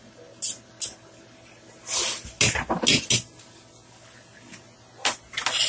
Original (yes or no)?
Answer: yes